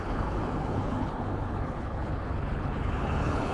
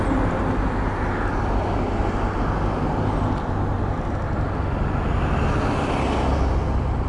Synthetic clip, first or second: first